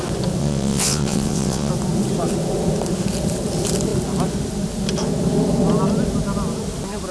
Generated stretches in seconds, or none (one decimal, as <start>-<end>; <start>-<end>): 0.4-1.7